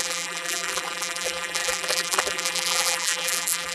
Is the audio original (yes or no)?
no